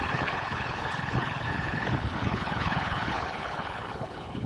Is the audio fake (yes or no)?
yes